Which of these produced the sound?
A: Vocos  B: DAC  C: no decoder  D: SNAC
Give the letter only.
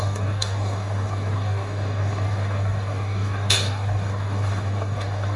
B